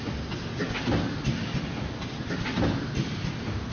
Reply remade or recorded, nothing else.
recorded